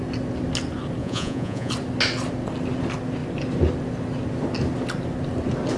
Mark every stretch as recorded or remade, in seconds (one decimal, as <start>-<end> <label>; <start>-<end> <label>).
0.0-1.0 recorded; 1.0-1.7 remade; 1.7-5.8 recorded